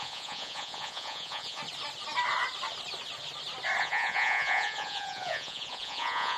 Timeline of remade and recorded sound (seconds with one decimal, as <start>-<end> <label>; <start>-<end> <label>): 0.0-1.6 remade; 1.6-3.8 recorded; 3.8-6.4 remade